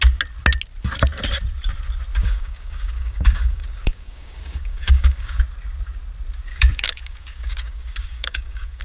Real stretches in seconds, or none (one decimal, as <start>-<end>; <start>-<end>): 0.0-2.1; 5.4-6.5